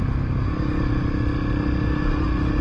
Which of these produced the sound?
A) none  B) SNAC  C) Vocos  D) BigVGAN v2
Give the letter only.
A